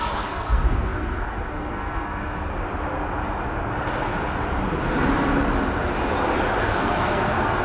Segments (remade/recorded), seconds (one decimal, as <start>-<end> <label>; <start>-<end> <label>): 0.0-2.5 remade; 2.5-6.6 recorded; 6.6-7.6 remade